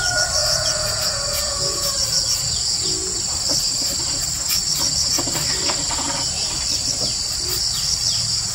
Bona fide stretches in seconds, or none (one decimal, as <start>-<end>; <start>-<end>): 0.0-0.4; 3.2-8.5